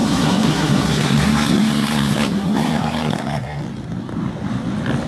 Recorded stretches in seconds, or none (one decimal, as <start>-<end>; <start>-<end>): 3.6-5.1